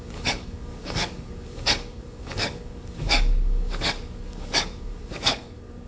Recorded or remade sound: remade